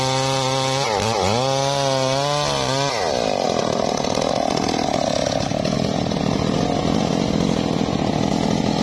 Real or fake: real